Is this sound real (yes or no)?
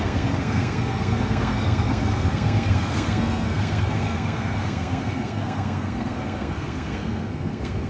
no